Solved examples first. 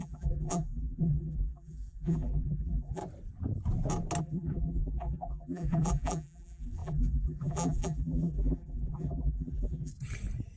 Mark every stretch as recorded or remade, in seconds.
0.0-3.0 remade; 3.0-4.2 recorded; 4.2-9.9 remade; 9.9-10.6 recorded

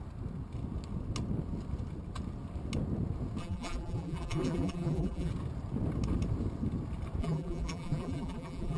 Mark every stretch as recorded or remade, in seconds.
0.0-3.4 recorded; 3.4-5.3 remade; 5.3-7.2 recorded; 7.2-8.8 remade

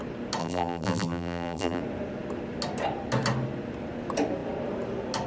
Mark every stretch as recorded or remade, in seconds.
0.0-0.4 recorded; 0.4-1.8 remade; 1.8-5.3 recorded

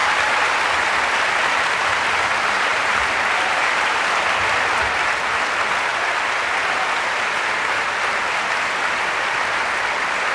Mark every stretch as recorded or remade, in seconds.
0.0-2.7 recorded; 2.7-4.2 remade; 4.2-10.3 recorded

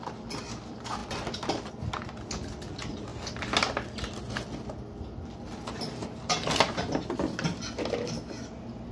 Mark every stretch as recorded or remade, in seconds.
0.0-8.9 recorded

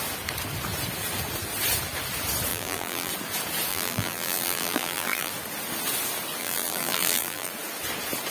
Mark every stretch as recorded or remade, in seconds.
0.0-2.5 recorded; 2.5-3.1 remade; 3.1-3.7 recorded; 3.7-5.3 remade; 5.3-6.4 recorded; 6.4-7.5 remade; 7.5-8.3 recorded

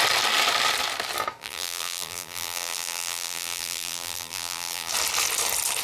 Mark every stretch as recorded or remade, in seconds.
0.0-1.4 recorded; 1.4-4.9 remade; 4.9-5.8 recorded

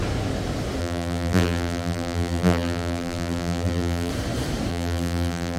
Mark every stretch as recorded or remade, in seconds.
0.0-0.8 recorded; 0.8-4.1 remade; 4.1-4.7 recorded; 4.7-5.6 remade